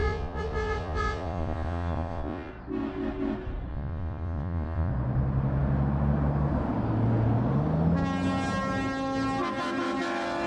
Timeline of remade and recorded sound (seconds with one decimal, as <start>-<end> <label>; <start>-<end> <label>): 0.0-2.5 remade; 2.5-3.7 recorded; 3.7-4.9 remade; 4.9-10.5 recorded